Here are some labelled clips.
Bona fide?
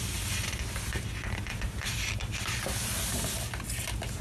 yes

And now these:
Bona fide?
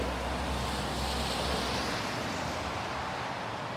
yes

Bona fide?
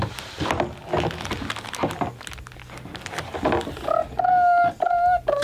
yes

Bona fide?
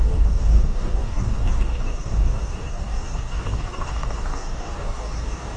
no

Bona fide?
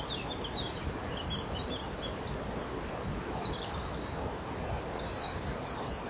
yes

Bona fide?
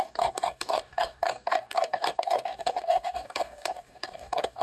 no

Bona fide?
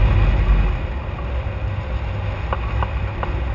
yes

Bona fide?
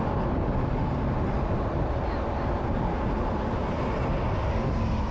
yes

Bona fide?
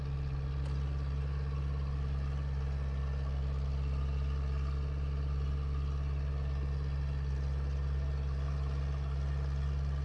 yes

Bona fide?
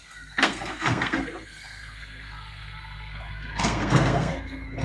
no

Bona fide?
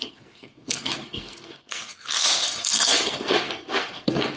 no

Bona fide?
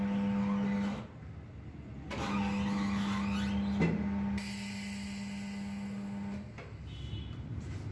yes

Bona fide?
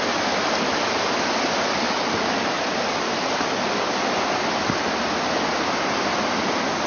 yes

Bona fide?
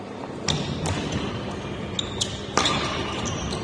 yes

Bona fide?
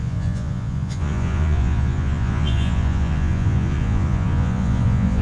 no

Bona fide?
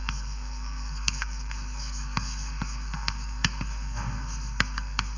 no